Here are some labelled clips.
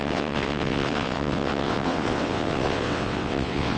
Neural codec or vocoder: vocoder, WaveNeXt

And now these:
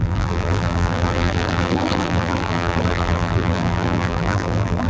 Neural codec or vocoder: vocoder, BigVGAN v2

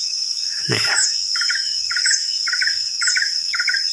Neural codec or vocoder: autoencoder, DAC-VAE